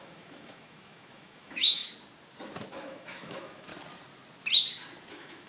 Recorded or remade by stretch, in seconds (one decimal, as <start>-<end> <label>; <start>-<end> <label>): 0.0-1.8 remade; 1.8-2.8 recorded; 2.8-3.7 remade; 3.7-5.1 recorded; 5.1-5.5 remade